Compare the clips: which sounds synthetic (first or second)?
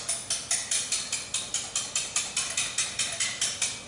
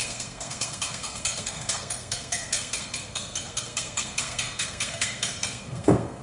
second